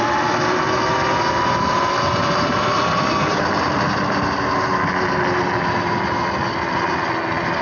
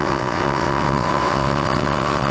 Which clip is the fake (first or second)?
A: second